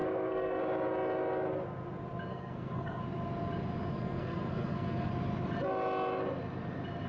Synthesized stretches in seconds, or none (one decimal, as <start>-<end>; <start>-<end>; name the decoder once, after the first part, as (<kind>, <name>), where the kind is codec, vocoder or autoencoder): 0.0-0.6 (codec, SNAC); 2.3-3.0; 3.9-5.1